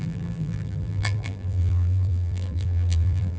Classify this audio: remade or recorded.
remade